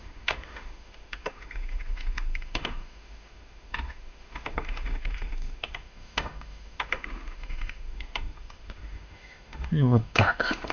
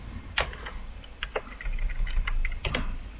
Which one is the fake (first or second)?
first